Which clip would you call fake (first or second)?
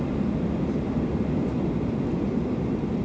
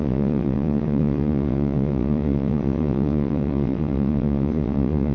second